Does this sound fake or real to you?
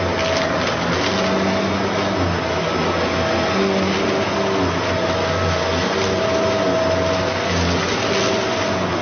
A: real